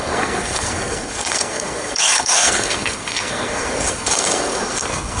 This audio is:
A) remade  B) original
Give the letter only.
A